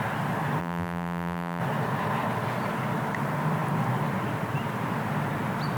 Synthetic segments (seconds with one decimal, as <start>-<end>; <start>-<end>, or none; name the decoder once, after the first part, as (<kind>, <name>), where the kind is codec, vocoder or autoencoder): 0.6-1.6 (vocoder, BigVGAN v2)